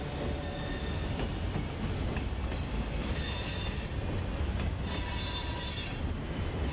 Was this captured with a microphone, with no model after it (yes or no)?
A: yes